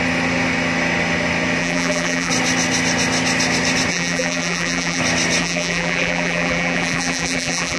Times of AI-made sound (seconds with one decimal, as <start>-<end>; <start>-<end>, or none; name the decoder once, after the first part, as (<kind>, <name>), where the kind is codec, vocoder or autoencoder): 1.6-2.3 (vocoder, BigVGAN v2); 3.9-5.0; 5.4-7.8